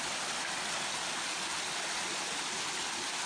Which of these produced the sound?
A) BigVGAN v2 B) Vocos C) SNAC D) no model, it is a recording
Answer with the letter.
D